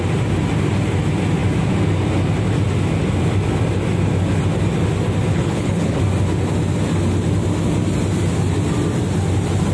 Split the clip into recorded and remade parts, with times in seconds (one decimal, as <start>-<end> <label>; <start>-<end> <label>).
0.0-5.3 recorded; 5.3-6.0 remade; 6.0-9.7 recorded